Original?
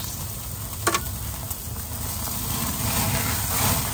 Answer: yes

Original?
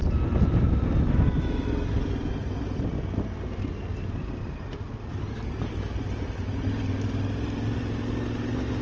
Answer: yes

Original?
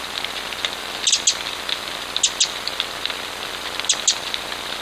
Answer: yes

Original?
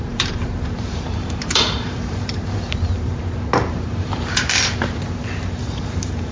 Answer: no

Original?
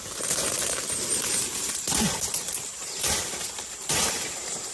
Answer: no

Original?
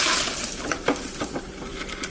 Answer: yes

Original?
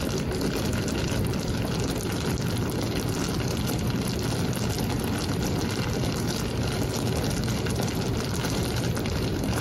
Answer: yes